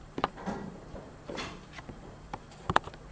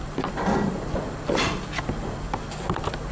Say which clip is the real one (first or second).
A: second